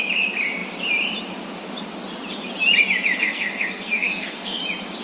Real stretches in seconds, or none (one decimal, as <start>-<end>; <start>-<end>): 0.0-3.2; 4.6-5.0